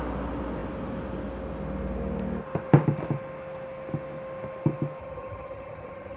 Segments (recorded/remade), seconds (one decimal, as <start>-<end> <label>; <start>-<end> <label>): 0.0-5.0 recorded; 5.0-6.2 remade